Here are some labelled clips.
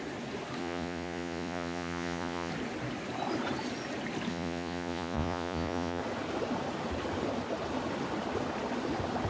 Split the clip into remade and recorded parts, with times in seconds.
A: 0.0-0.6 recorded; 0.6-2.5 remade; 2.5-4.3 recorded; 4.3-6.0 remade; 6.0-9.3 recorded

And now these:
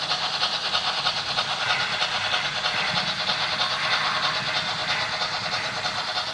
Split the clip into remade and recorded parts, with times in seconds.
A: 0.0-6.3 recorded

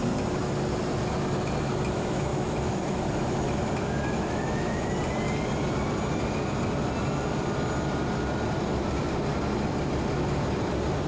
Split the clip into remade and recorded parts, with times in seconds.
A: 0.0-2.3 recorded; 2.3-4.9 remade; 4.9-11.1 recorded

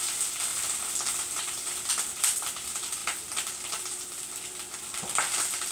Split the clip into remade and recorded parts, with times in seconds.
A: 0.0-5.7 recorded